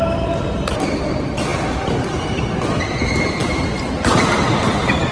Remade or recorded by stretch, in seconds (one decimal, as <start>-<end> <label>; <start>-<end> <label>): 0.0-5.1 recorded